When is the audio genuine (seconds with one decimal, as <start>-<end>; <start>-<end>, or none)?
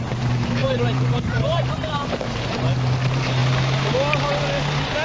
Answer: 0.0-0.6; 2.6-5.0